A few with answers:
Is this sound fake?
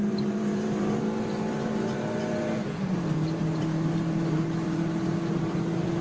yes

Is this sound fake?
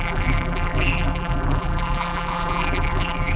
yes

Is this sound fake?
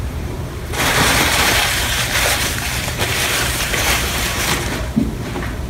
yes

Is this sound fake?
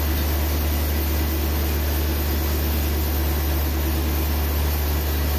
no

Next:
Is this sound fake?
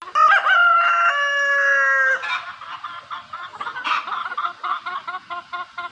no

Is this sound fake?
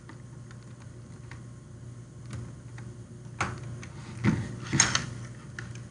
no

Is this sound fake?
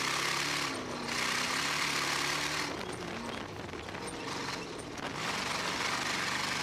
no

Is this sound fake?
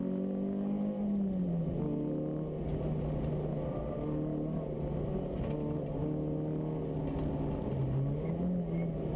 no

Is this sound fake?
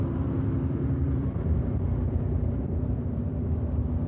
yes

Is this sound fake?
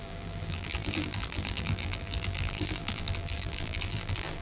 yes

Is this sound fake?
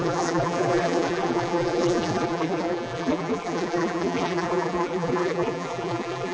yes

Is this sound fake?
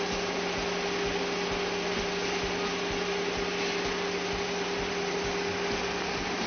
no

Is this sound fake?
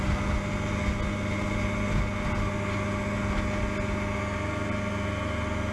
no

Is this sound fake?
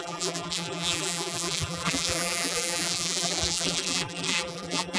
yes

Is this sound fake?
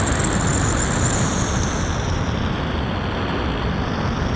no